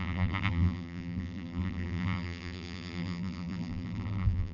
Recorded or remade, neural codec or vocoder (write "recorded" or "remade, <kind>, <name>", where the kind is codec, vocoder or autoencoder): remade, vocoder, BigVGAN v2